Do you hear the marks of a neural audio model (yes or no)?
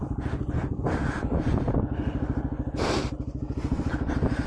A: no